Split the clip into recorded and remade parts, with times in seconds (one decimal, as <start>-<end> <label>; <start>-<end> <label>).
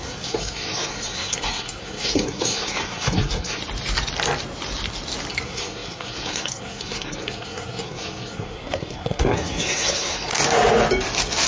0.0-3.6 remade; 3.6-5.3 recorded; 5.3-10.3 remade; 10.3-11.5 recorded